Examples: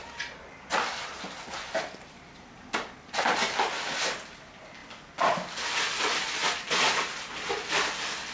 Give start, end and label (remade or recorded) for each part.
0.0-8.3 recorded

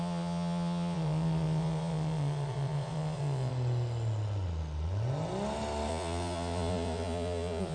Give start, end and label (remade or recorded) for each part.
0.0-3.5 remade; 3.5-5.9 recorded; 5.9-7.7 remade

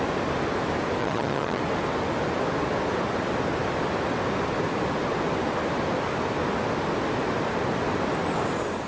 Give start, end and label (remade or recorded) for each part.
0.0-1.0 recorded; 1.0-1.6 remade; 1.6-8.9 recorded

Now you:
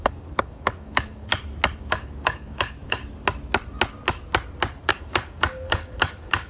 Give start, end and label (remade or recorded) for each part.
0.0-1.3 remade; 1.3-1.8 recorded; 1.8-3.0 remade; 3.0-4.9 recorded; 4.9-6.5 remade